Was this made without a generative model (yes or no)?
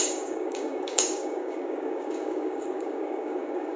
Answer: no